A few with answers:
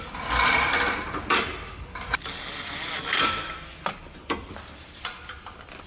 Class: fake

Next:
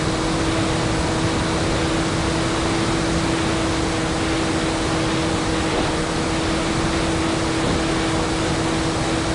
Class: real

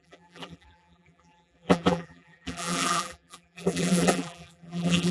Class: fake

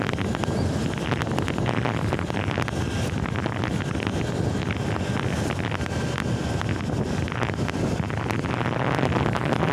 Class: real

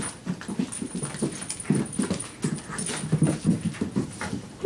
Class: real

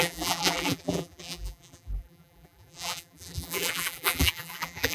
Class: fake